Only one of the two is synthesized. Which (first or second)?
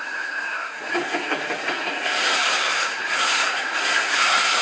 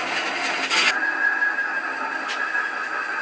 first